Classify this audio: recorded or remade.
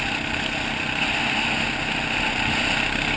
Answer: recorded